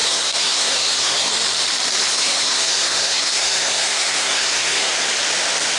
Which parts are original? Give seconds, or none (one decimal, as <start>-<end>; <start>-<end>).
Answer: 1.3-2.1; 4.9-5.8